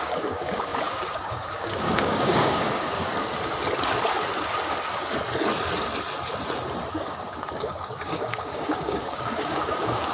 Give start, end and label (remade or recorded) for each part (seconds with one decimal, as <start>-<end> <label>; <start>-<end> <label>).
0.0-3.1 remade; 3.1-6.9 recorded; 6.9-10.1 remade